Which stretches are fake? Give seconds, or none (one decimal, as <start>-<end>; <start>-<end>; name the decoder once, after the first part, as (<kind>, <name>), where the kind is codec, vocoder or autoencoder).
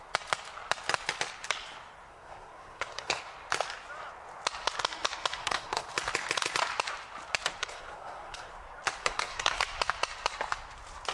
2.1-3.2 (codec, SNAC); 5.4-5.9; 7.6-8.5; 9.0-9.6